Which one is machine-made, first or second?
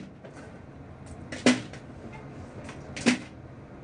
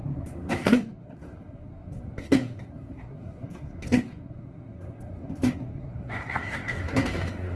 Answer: second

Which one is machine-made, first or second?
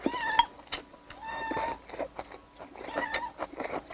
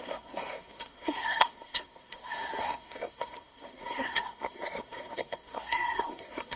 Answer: second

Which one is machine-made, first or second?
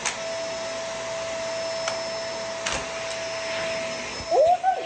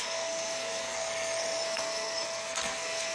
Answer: second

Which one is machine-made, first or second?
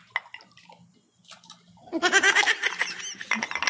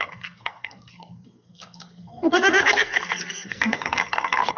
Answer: second